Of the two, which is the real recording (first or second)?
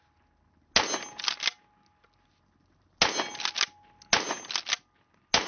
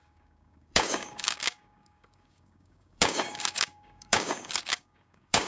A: first